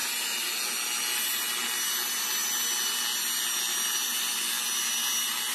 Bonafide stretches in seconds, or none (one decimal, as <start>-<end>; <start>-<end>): 0.0-5.5